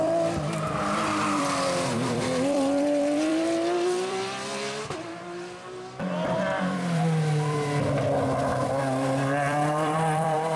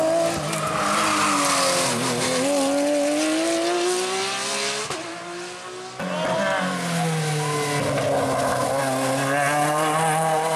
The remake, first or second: first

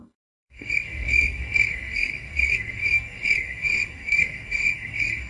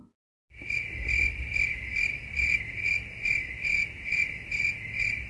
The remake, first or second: first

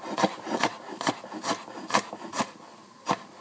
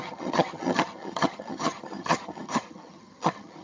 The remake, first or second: second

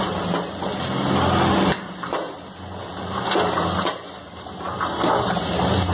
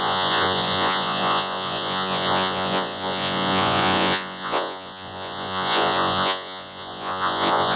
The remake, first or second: second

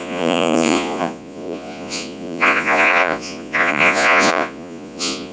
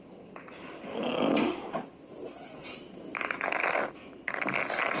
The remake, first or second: first